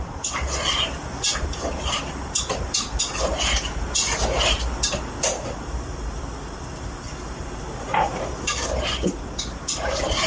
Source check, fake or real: real